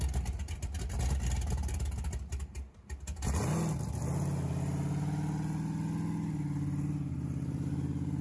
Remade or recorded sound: recorded